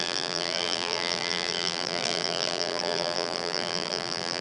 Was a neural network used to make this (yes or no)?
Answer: yes